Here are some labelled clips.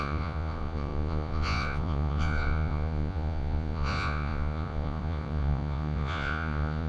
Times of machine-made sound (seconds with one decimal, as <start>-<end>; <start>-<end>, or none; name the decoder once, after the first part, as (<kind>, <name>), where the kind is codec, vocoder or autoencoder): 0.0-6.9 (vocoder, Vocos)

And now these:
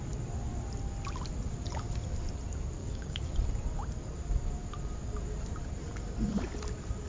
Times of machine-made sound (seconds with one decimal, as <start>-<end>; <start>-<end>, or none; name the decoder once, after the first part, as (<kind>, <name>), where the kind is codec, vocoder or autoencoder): 2.8-3.3 (codec, DAC)

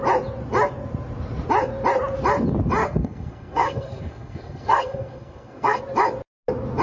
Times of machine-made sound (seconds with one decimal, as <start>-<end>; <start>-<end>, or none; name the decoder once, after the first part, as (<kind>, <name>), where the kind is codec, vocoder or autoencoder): 2.8-5.8 (codec, SNAC)